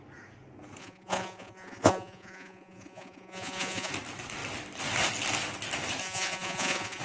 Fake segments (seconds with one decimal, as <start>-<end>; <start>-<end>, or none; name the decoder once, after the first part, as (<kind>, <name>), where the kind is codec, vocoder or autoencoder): 0.8-3.9 (vocoder, Vocos); 6.0-7.0